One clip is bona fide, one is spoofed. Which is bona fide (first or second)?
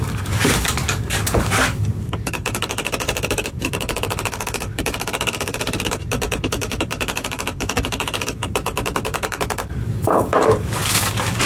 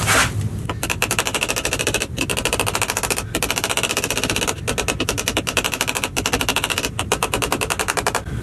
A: second